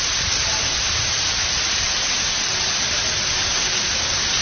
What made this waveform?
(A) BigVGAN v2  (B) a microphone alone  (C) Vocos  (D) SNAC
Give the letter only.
B